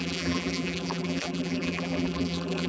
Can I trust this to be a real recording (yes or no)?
no